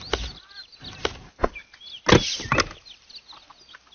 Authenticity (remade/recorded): recorded